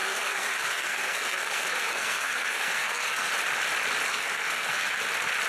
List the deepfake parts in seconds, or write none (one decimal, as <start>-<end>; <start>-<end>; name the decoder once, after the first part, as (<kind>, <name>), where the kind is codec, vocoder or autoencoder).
0.0-3.3 (codec, SNAC); 4.1-5.0

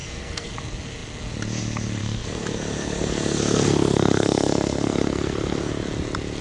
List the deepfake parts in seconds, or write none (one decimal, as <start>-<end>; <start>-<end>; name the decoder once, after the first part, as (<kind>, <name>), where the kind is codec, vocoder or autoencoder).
0.0-0.5 (codec, SNAC); 2.0-5.7

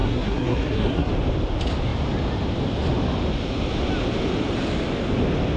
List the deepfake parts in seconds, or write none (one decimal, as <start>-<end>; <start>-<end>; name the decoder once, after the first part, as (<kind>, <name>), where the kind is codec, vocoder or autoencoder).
0.0-1.1 (codec, SNAC)

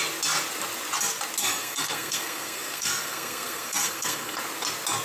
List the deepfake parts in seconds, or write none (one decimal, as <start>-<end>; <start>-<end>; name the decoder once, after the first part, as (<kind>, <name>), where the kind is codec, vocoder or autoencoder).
1.4-4.4 (codec, SNAC)

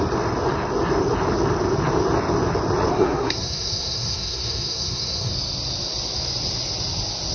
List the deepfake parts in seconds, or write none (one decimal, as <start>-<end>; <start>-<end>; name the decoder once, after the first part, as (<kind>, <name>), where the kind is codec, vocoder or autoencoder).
2.9-5.3 (codec, SNAC)

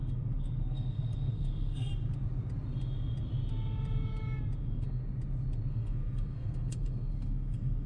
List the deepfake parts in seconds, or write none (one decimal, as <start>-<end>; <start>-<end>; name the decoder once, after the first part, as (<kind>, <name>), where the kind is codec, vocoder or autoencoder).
0.0-1.9 (codec, SNAC); 4.6-5.0; 5.7-7.9

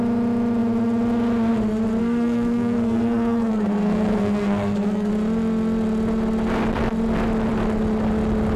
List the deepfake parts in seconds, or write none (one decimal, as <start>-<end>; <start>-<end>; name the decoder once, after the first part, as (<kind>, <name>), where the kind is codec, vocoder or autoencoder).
2.0-5.1 (codec, SNAC)

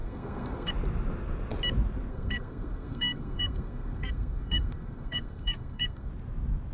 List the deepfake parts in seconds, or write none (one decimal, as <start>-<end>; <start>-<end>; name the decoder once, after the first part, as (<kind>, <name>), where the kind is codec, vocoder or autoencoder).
0.0-0.7 (codec, SNAC); 2.1-6.1